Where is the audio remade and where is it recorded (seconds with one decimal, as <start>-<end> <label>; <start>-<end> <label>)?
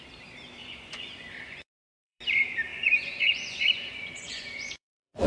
0.0-0.6 recorded; 0.6-2.2 remade; 2.2-2.7 recorded; 2.7-5.3 remade